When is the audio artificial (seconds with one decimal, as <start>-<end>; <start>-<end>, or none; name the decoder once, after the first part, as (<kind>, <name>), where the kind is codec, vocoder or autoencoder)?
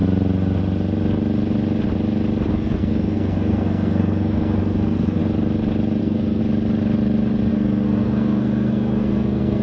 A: 2.5-5.2 (codec, SNAC); 6.0-6.4; 7.5-9.6